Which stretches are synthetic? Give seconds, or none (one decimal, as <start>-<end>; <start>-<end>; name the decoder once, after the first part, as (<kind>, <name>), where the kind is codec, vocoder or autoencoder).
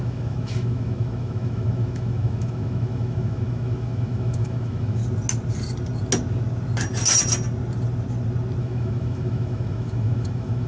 0.0-5.0 (autoencoder, DAC-VAE); 8.6-10.7